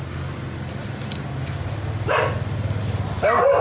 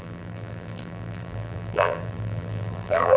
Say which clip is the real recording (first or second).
first